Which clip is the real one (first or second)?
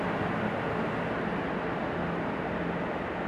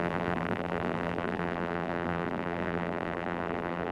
first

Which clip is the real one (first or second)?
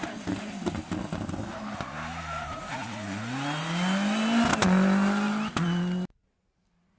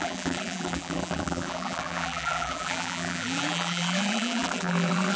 first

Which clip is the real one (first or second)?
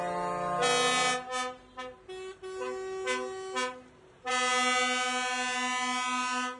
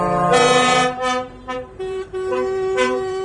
first